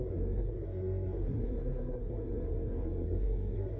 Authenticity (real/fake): fake